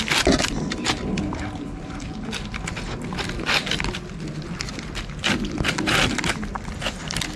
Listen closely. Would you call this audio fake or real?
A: real